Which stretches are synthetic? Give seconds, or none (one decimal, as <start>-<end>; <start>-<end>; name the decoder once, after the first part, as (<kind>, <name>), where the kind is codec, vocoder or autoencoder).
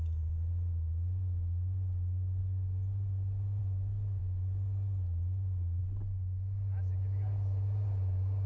none